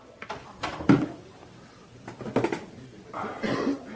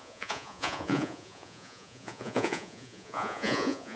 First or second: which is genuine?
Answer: first